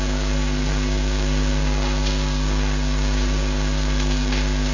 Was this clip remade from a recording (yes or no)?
yes